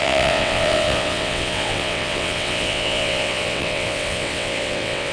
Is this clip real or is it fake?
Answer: fake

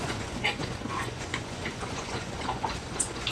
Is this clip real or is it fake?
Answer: fake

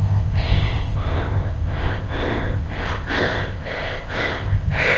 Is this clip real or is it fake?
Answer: fake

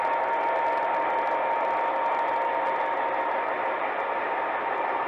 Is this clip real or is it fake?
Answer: real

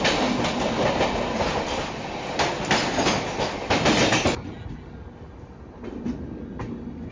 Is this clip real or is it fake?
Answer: real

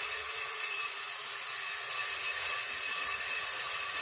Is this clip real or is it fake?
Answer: fake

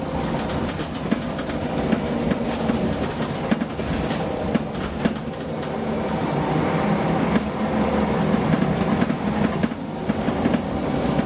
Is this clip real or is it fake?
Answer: real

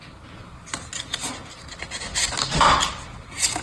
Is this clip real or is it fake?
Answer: real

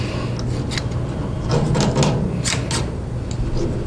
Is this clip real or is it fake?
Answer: real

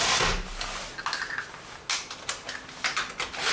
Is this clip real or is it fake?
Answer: real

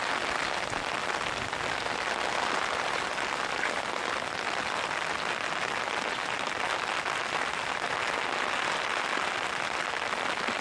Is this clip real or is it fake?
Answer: real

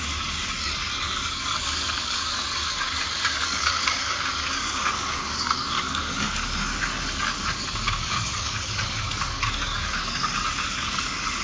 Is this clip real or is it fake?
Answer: fake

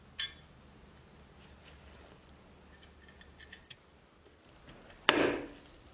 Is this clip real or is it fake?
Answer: real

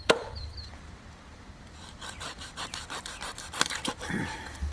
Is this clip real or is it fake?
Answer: fake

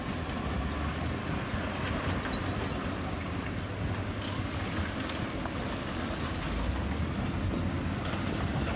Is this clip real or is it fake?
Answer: real